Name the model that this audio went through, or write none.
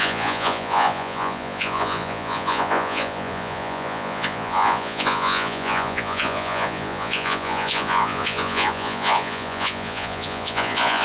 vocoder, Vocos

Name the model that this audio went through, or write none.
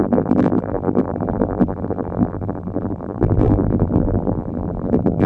vocoder, BigVGAN v2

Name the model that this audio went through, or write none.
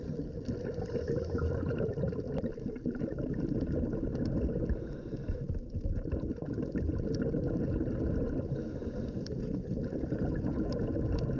none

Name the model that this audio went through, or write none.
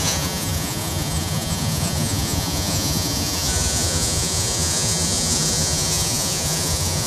vocoder, Vocos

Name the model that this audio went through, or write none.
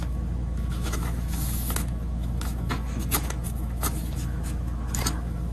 autoencoder, DAC-VAE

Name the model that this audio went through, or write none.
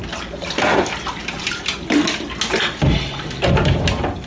none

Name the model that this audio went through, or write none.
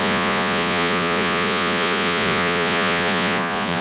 vocoder, Vocos